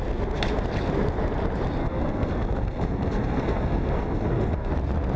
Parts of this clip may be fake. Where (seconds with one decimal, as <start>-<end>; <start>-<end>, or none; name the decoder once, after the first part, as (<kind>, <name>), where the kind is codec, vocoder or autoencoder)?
1.8-4.7 (codec, SNAC)